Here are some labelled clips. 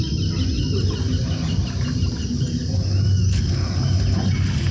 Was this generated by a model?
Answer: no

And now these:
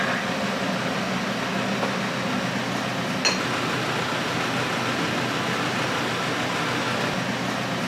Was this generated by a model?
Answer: no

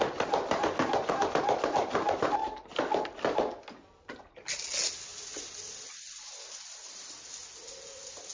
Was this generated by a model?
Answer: no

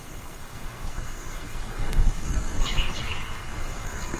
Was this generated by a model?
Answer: yes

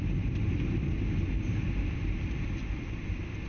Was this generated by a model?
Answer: no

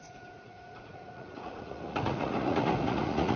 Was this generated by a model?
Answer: yes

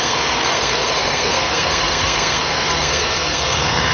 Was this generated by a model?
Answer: yes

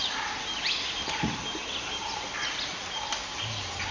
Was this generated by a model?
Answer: no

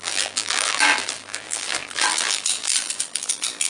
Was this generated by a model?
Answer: yes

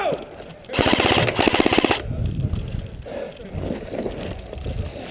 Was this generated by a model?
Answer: no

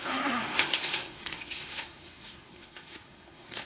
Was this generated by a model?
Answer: yes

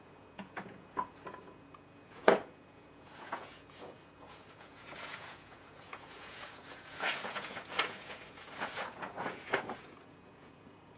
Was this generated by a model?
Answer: yes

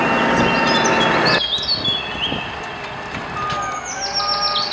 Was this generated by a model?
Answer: no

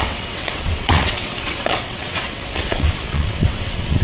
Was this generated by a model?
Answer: yes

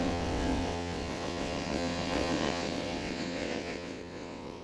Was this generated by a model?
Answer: yes